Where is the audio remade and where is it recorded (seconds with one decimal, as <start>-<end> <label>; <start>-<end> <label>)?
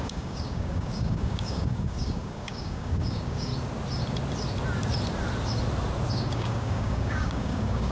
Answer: 0.0-3.5 remade; 3.5-6.1 recorded; 6.1-7.9 remade